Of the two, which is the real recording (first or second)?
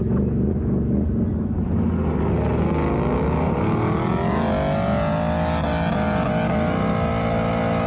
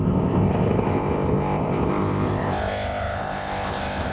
first